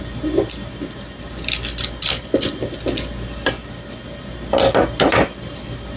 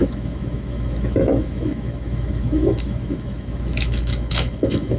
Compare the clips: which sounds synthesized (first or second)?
second